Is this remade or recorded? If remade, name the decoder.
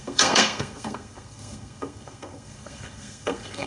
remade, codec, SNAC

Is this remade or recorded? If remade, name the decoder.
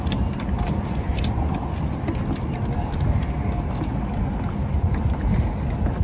recorded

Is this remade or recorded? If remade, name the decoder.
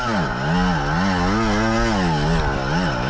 recorded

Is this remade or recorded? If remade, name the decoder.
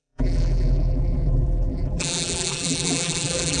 remade, vocoder, BigVGAN v2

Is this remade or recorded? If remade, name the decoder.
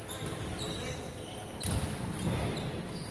recorded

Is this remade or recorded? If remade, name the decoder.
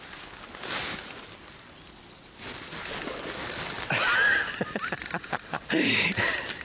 recorded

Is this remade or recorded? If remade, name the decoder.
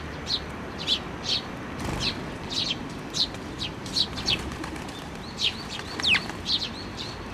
remade, vocoder, BigVGAN v2